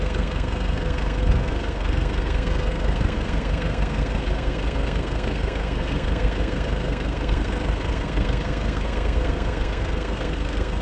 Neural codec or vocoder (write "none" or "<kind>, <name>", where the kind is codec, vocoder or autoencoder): codec, SNAC